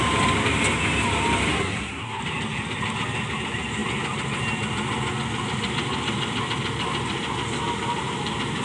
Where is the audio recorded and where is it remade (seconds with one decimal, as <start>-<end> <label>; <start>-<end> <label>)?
0.0-1.5 recorded; 1.5-2.2 remade; 2.2-8.6 recorded

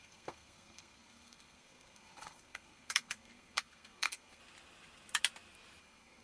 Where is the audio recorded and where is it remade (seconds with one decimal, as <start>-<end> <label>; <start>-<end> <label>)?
0.0-4.4 remade; 4.4-5.8 recorded; 5.8-6.2 remade